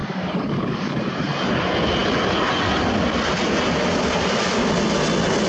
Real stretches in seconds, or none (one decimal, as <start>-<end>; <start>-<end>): 1.0-5.5